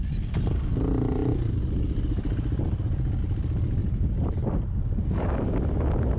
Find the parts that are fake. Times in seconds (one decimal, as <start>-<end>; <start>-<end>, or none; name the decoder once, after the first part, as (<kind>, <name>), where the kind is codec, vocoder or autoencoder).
3.8-5.5 (vocoder, BigVGAN v2)